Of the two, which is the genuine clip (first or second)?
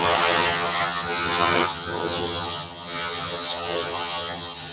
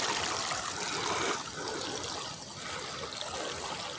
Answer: second